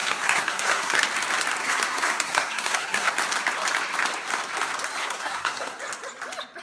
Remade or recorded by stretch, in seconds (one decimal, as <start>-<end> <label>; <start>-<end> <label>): 0.0-1.0 remade; 1.0-1.6 recorded; 1.6-3.1 remade; 3.1-5.0 recorded; 5.0-5.8 remade; 5.8-6.6 recorded